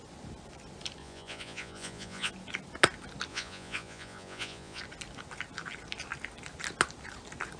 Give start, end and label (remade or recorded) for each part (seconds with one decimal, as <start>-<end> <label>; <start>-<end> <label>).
0.0-1.0 recorded; 1.0-2.3 remade; 2.3-3.3 recorded; 3.3-4.8 remade; 4.8-7.6 recorded